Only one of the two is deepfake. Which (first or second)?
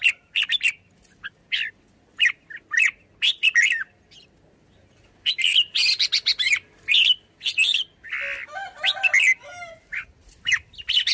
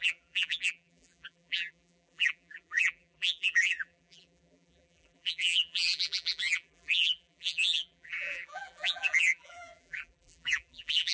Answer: second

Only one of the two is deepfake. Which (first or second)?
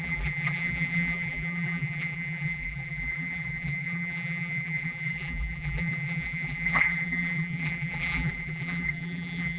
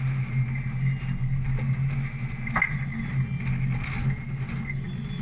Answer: first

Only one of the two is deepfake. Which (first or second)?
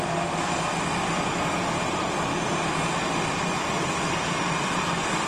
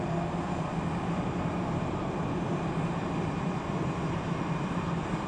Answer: second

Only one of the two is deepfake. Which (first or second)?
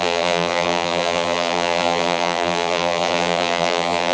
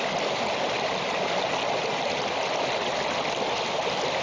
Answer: first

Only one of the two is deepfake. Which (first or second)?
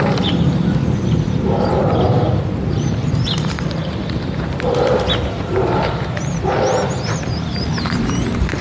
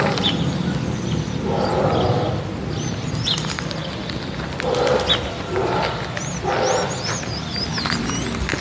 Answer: first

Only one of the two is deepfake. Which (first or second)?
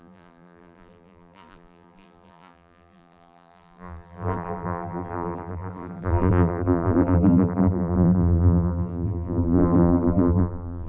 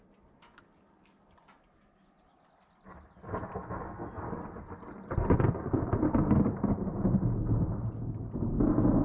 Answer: first